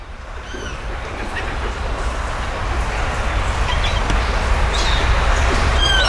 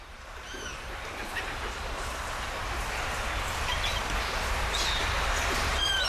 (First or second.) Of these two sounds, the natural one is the first